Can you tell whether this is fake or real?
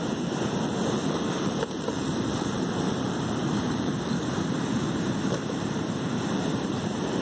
fake